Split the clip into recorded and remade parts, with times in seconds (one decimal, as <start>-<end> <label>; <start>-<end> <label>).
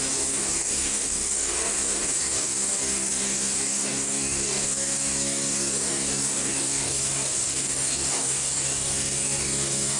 0.0-10.0 remade